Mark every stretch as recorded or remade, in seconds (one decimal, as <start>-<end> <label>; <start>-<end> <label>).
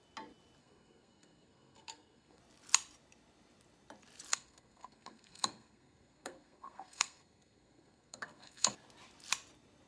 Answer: 0.0-0.6 recorded; 0.6-2.4 remade; 2.4-4.3 recorded; 4.3-8.7 remade; 8.7-9.9 recorded